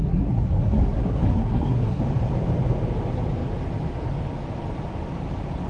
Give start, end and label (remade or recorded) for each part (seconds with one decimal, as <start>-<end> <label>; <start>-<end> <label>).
0.0-2.0 remade; 2.0-5.7 recorded